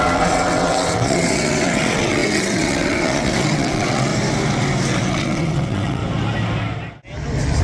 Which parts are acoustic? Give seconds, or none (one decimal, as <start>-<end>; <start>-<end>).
4.1-5.1; 6.0-7.6